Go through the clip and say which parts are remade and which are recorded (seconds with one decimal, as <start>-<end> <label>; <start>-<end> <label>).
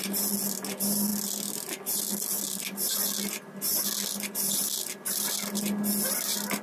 0.0-6.6 recorded